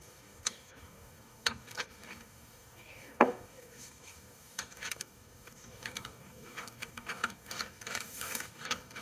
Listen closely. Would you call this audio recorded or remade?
remade